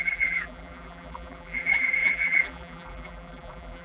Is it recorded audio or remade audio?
remade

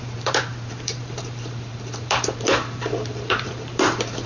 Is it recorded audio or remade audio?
remade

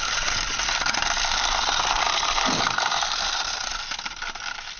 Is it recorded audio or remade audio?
remade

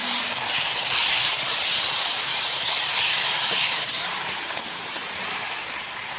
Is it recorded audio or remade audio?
remade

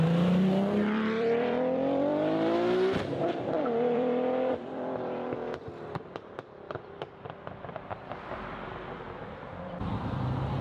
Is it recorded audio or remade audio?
remade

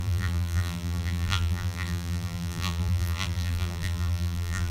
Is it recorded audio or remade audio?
remade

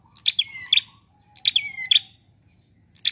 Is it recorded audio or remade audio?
recorded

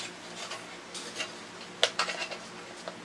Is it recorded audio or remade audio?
recorded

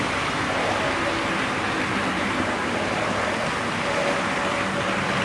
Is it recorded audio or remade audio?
recorded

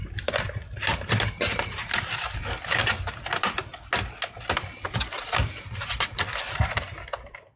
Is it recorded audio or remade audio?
recorded